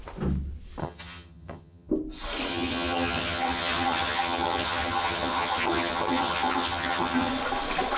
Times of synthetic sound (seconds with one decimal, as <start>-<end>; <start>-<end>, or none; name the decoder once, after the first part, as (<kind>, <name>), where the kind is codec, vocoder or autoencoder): 0.8-1.9 (vocoder, HiFi-GAN); 2.5-7.3